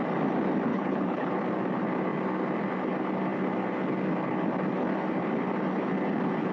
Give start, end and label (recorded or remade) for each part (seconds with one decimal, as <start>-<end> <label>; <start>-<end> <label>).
0.0-0.7 recorded; 0.7-1.3 remade; 1.3-6.5 recorded